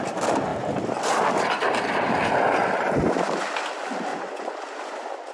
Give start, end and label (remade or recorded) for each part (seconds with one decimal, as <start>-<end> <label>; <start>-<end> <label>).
0.0-4.1 recorded; 4.1-4.6 remade; 4.6-5.3 recorded

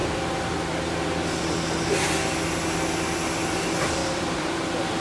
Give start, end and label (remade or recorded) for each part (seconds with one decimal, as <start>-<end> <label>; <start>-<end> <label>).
0.0-4.0 recorded; 4.0-4.6 remade; 4.6-5.0 recorded

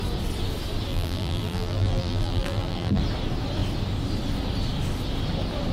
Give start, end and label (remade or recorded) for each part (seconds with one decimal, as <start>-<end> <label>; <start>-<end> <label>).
0.0-0.9 recorded; 0.9-3.0 remade; 3.0-5.7 recorded

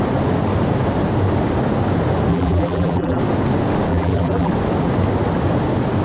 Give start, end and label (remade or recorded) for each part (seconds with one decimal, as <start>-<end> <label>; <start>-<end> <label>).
0.0-2.3 recorded; 2.3-3.2 remade; 3.2-3.9 recorded; 3.9-4.5 remade; 4.5-6.0 recorded

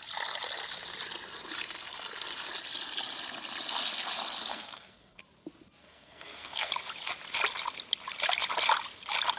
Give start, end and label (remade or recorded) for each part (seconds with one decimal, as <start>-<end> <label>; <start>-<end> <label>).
0.0-4.5 recorded; 4.5-5.2 remade; 5.2-5.8 recorded; 5.8-6.7 remade; 6.7-9.4 recorded